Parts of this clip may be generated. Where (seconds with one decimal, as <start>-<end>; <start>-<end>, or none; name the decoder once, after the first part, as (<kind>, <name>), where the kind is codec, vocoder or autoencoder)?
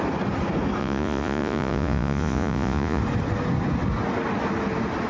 0.8-3.0 (vocoder, Vocos)